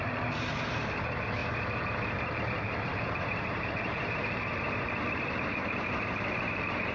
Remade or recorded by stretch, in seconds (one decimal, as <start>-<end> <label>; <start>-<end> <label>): 0.0-6.9 remade